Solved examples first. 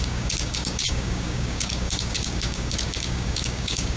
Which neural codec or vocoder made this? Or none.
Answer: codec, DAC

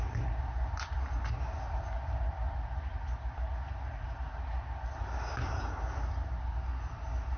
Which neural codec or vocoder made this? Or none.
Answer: none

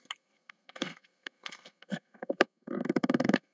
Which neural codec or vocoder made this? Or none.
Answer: codec, SNAC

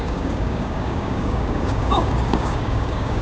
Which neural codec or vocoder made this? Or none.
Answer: codec, DAC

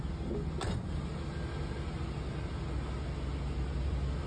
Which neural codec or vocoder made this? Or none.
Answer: none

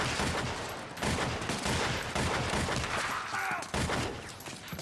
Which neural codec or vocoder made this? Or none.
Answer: none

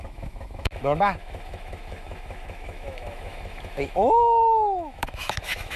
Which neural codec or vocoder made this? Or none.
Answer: autoencoder, DAC-VAE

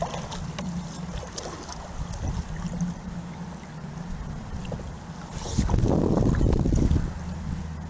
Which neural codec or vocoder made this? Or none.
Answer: none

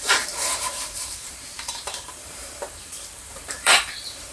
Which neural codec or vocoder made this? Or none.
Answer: vocoder, BigVGAN v2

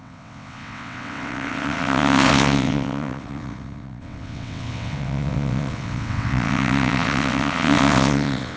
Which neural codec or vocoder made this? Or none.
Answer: vocoder, WaveNeXt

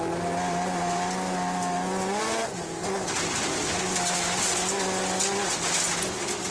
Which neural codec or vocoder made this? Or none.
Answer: none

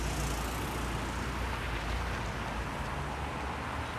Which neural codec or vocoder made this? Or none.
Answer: none